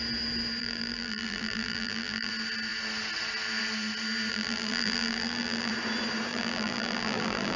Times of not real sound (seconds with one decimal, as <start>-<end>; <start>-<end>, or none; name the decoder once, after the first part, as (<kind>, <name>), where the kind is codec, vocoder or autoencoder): 0.6-2.3 (vocoder, BigVGAN v2); 4.3-5.7; 6.3-7.6